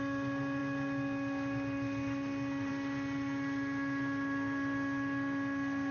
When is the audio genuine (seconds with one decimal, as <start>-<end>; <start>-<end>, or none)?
0.0-5.9